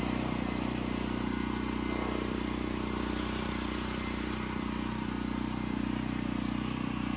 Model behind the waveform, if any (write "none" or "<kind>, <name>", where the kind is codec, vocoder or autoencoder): none